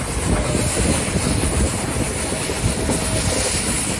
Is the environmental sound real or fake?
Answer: real